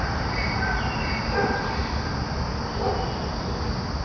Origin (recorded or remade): recorded